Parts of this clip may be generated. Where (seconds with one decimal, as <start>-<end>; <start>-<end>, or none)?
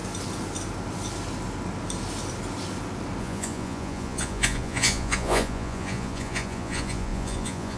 3.2-7.8